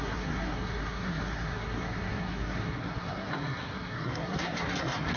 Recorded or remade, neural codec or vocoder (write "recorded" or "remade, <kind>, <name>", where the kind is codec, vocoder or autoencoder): remade, codec, SNAC